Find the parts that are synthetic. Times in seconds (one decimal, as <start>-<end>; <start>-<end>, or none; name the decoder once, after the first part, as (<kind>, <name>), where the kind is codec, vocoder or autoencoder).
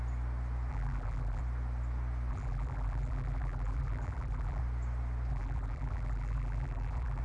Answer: 0.7-1.4 (vocoder, BigVGAN v2); 2.3-4.6; 5.3-7.2